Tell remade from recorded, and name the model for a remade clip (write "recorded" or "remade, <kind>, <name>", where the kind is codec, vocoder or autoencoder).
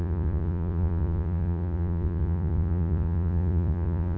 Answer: remade, vocoder, Vocos